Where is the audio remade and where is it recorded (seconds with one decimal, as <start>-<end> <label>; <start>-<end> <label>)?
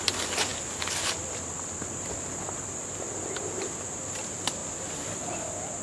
0.0-5.8 recorded